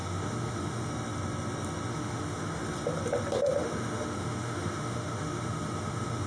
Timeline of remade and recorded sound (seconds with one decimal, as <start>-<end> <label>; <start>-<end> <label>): 0.0-0.9 remade; 0.9-1.9 recorded; 1.9-2.6 remade; 2.6-3.6 recorded; 3.6-6.3 remade